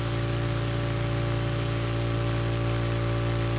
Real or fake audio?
real